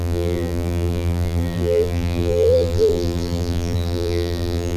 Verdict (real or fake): fake